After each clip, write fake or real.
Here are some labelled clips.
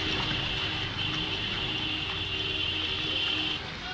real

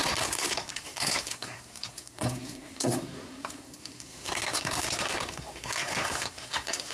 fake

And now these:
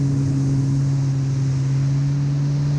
real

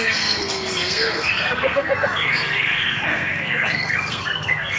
fake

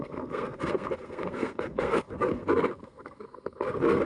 fake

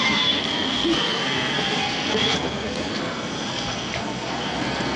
fake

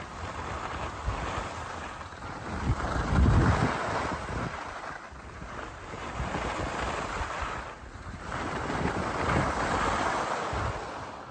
real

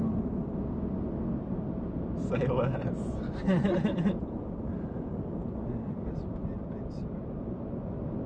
real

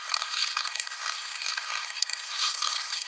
fake